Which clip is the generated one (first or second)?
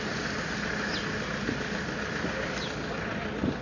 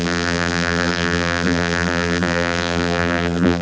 second